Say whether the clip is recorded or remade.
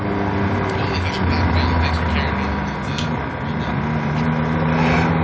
recorded